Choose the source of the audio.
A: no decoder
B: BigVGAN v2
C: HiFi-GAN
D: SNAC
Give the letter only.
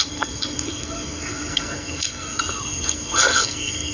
D